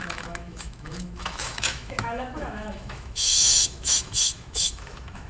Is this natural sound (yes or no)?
no